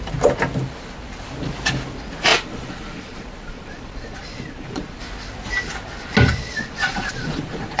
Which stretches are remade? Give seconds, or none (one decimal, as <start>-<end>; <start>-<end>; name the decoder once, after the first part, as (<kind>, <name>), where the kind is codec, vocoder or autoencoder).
2.3-5.0 (vocoder, Vocos); 6.4-7.8

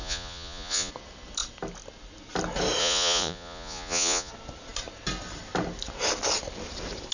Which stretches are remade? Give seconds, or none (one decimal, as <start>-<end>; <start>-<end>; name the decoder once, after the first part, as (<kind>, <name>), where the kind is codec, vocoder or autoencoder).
0.0-0.9 (vocoder, Vocos); 2.8-4.3

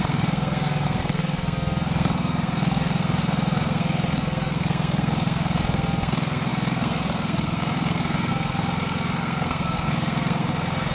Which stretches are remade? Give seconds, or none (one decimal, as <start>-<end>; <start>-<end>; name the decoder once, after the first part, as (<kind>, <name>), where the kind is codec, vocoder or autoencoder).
0.0-10.9 (codec, SNAC)

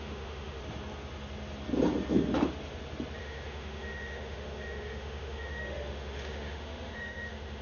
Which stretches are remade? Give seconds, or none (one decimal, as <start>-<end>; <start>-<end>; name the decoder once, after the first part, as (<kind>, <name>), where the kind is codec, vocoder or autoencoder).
0.0-0.6 (autoencoder, DAC-VAE); 3.2-7.6

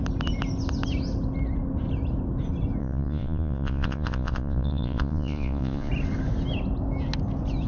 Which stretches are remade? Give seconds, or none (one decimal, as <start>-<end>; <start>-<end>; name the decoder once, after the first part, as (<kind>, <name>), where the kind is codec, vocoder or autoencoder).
2.8-5.9 (vocoder, Vocos)